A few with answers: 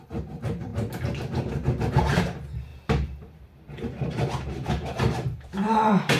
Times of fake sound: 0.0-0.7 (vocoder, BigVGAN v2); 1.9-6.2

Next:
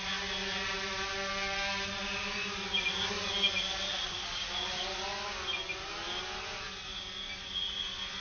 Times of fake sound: 0.4-3.2 (vocoder, BigVGAN v2)